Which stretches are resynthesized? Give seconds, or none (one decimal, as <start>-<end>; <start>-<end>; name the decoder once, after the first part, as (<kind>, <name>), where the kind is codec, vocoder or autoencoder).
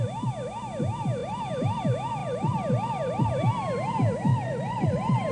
1.2-1.8 (vocoder, BigVGAN v2); 2.2-3.3; 4.3-5.3